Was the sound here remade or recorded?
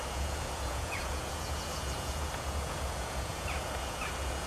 remade